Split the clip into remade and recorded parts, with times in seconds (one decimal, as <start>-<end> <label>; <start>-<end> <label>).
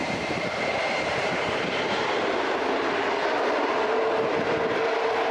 0.0-2.1 remade; 2.1-5.3 recorded